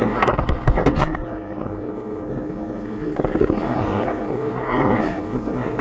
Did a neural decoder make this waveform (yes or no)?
yes